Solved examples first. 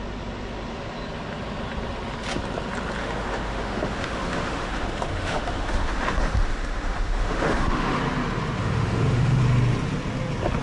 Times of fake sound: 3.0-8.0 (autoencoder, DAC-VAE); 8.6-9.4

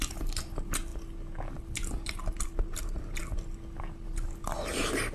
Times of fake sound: none

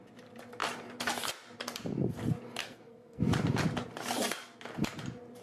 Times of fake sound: 2.6-3.2 (codec, SNAC)